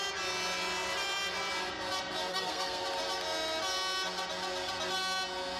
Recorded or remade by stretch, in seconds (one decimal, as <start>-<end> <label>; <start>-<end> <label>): 0.0-2.3 recorded; 2.3-2.8 remade; 2.8-5.6 recorded